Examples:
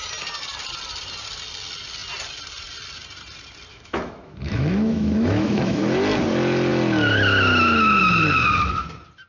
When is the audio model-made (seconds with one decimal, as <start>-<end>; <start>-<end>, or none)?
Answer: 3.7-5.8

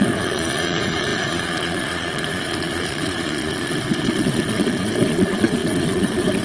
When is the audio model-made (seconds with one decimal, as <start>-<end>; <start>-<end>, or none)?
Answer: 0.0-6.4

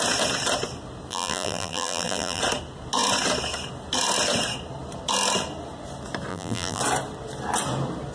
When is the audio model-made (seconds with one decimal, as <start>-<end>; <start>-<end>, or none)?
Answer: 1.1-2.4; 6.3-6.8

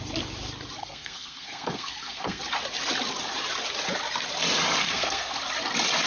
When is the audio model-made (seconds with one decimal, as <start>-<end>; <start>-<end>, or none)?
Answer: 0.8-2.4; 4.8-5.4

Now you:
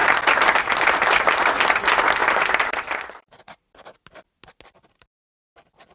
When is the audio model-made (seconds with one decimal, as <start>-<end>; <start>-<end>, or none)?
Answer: none

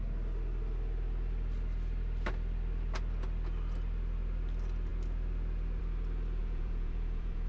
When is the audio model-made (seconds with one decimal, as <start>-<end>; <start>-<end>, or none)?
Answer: 6.4-7.5